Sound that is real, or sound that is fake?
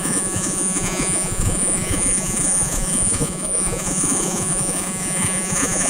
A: fake